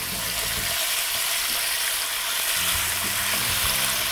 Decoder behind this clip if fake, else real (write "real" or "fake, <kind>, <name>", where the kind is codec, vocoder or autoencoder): real